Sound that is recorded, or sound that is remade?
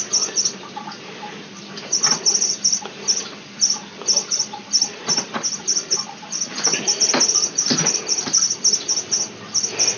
remade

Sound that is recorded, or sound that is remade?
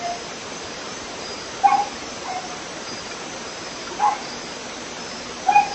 remade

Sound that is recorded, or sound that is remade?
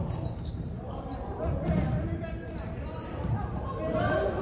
remade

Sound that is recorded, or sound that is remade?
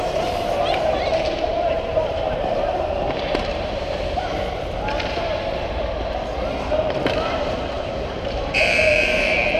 remade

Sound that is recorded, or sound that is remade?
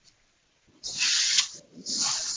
remade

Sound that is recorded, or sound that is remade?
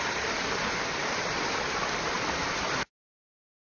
recorded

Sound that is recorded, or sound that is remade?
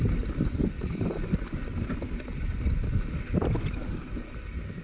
recorded